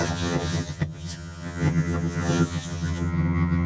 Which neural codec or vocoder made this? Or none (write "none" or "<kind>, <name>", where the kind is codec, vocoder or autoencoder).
vocoder, HiFi-GAN